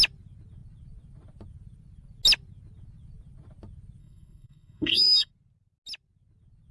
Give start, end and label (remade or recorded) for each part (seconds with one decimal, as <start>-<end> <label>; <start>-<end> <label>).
0.0-4.0 recorded; 4.0-5.3 remade; 5.3-6.7 recorded